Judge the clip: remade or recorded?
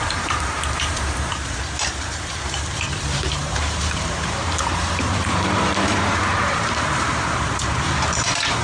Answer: remade